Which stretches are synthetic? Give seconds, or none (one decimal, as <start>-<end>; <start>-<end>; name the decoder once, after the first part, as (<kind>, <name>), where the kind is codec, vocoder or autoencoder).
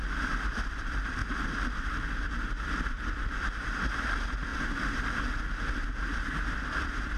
0.0-1.2 (vocoder, BigVGAN v2); 2.2-4.5; 6.6-7.2